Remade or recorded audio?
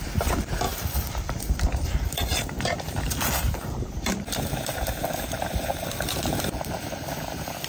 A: remade